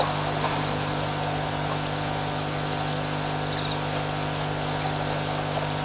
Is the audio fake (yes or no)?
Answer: no